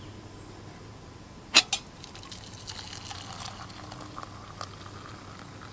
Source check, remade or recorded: recorded